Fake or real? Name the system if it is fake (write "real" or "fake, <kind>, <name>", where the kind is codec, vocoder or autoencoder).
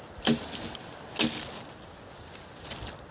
real